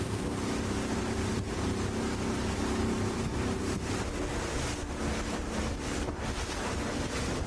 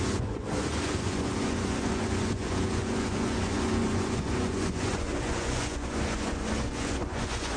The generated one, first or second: second